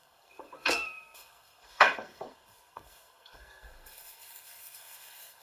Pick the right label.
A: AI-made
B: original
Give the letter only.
A